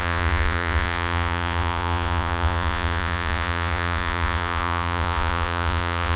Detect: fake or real fake